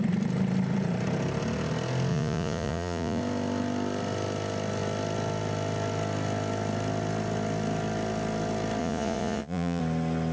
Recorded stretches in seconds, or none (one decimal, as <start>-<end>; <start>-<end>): 0.0-2.1; 3.2-8.8; 9.8-10.3